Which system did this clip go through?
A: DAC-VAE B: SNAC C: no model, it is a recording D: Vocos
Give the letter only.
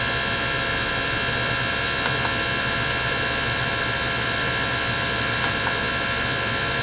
C